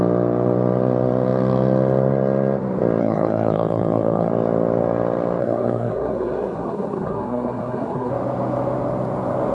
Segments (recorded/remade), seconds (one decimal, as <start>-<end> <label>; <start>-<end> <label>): 0.0-3.0 recorded; 3.0-4.3 remade; 4.3-5.4 recorded; 5.4-8.1 remade; 8.1-9.5 recorded